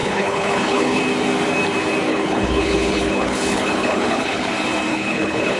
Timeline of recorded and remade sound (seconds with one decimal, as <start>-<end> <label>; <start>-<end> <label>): 0.0-1.0 remade; 1.0-2.1 recorded; 2.1-4.5 remade; 4.5-4.9 recorded; 4.9-5.6 remade